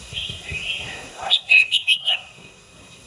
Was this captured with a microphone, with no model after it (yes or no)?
no